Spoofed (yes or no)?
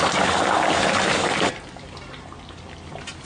yes